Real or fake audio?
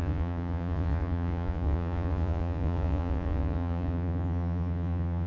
fake